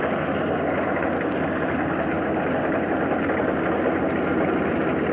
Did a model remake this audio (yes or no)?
no